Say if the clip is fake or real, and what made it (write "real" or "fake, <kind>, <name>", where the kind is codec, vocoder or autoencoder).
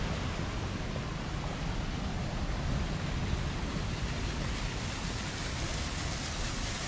real